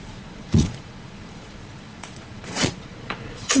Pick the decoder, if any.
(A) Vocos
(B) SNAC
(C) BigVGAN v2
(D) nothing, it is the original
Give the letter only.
A